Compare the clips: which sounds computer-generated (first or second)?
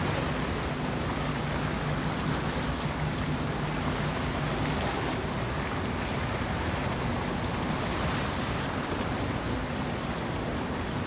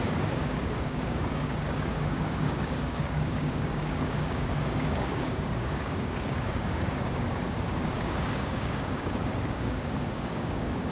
second